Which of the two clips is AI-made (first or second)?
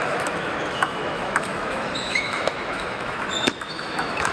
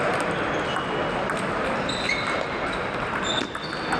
first